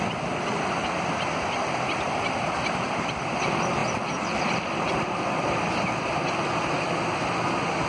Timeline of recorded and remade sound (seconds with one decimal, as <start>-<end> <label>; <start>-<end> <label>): 0.0-7.9 recorded